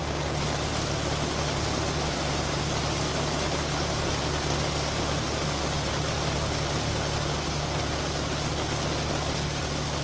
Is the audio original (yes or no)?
yes